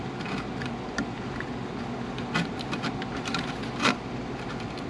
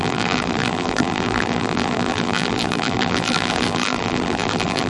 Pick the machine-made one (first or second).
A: second